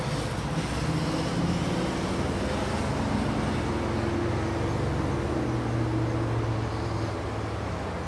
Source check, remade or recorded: recorded